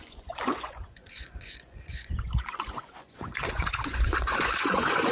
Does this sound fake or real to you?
fake